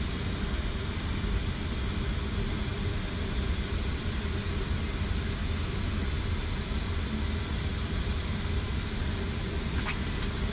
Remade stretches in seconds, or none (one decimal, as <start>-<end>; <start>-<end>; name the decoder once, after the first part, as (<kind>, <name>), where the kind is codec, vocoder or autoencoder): none